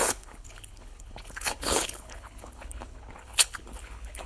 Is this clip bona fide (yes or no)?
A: no